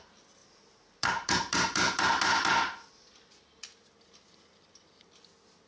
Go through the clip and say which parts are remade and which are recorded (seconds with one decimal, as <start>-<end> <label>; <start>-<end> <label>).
0.0-0.4 recorded; 0.4-2.9 remade; 2.9-5.7 recorded